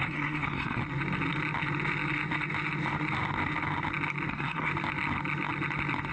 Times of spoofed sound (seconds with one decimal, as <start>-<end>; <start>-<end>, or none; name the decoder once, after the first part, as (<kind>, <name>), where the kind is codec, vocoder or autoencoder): 0.0-0.8 (codec, SNAC); 4.3-4.7